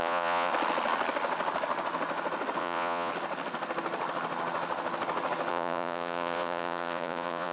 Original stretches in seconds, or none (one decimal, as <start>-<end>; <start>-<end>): 0.5-2.6; 3.1-5.5